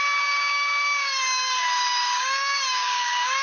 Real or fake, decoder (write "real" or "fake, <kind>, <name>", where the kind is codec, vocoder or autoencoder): fake, codec, DAC